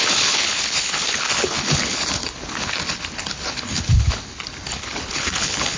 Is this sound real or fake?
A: fake